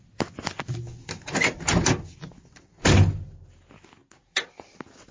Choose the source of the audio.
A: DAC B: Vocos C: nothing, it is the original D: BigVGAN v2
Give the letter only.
C